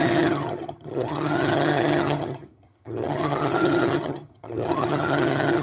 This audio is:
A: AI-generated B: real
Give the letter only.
A